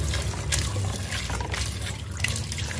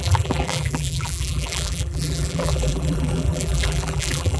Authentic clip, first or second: first